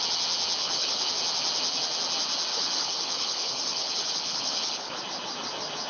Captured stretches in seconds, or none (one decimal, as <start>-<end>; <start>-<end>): 0.0-0.6; 1.1-2.5; 5.0-5.9